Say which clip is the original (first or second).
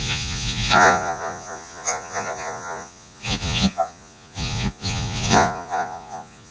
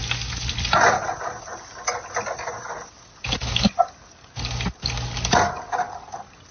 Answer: second